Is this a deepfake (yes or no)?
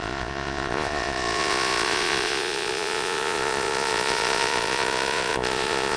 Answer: yes